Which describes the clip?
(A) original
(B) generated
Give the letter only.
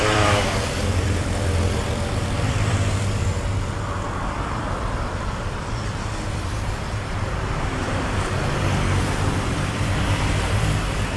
B